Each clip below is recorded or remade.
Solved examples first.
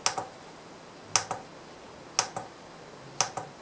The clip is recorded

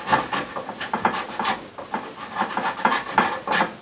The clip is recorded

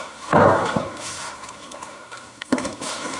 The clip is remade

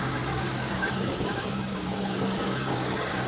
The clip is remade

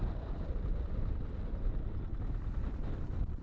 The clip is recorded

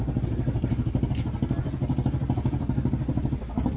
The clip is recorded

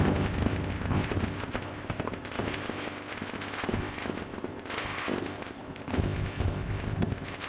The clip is remade